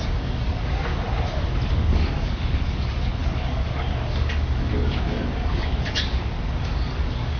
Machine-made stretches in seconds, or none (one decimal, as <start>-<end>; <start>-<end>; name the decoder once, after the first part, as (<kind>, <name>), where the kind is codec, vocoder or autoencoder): 0.0-0.9 (codec, DAC); 1.7-7.4